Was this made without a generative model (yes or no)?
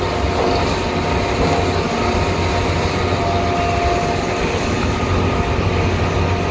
yes